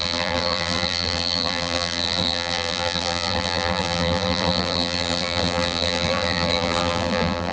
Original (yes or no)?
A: no